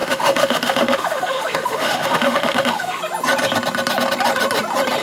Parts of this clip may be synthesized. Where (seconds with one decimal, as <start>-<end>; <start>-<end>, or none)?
0.0-3.0